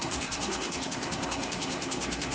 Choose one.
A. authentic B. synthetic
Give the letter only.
B